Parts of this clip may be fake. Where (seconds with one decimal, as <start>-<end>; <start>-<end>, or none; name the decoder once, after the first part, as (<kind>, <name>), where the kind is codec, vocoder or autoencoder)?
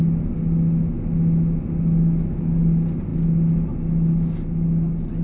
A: none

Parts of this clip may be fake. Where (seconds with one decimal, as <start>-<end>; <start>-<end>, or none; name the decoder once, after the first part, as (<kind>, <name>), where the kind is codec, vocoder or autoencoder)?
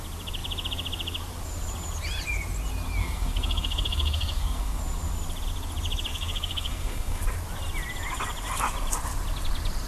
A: 3.0-4.8 (codec, SNAC); 6.1-7.2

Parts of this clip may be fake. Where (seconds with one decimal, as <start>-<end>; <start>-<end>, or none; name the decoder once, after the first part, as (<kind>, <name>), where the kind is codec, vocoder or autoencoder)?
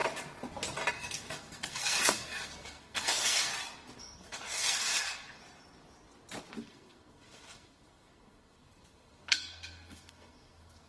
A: 0.9-3.5 (codec, SNAC); 4.0-5.4; 6.6-10.9